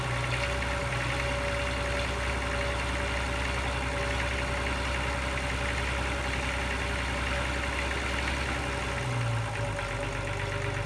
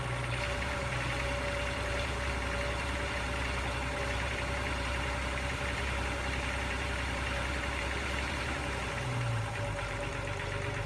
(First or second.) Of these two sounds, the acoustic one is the first